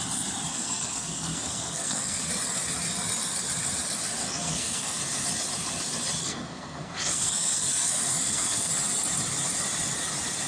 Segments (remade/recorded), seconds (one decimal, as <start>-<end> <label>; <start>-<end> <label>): 0.0-0.5 recorded; 0.5-2.3 remade; 2.3-4.2 recorded; 4.2-5.0 remade; 5.0-6.2 recorded; 6.2-8.7 remade; 8.7-10.5 recorded